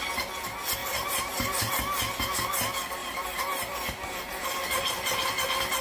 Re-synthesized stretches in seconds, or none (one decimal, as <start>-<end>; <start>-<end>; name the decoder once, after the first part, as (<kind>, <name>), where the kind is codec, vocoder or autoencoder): 0.8-1.7 (vocoder, BigVGAN v2); 3.0-5.3